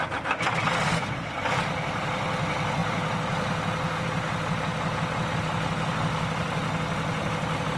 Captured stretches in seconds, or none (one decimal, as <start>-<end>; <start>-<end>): 0.0-7.8